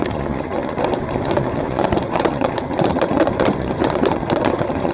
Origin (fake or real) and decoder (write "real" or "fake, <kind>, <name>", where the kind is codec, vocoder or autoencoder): fake, vocoder, Vocos